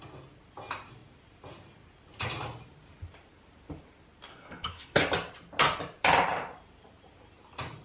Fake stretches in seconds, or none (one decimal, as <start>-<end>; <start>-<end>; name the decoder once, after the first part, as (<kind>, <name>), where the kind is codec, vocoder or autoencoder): 4.3-5.0 (codec, SNAC)